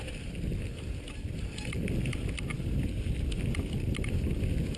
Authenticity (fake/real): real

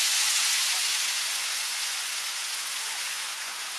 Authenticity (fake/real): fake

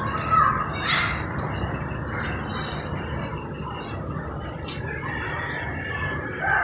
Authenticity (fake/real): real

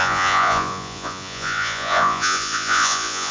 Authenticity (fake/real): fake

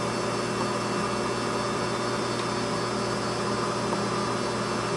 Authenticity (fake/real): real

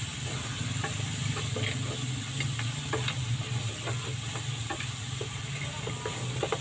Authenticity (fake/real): real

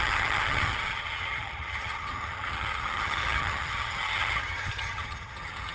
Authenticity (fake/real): fake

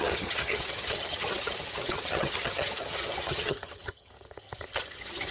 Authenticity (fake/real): fake